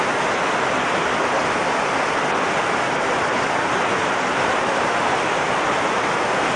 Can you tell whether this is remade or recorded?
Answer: recorded